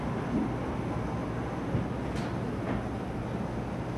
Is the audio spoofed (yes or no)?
no